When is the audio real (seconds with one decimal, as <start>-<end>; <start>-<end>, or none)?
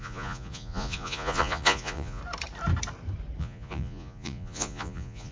2.2-3.4